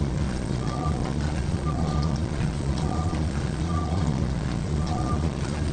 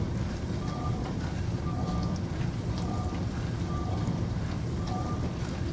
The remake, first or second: first